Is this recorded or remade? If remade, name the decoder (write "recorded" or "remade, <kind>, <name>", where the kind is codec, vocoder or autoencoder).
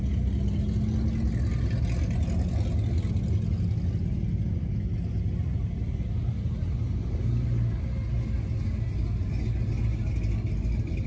recorded